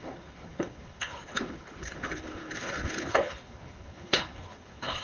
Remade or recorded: remade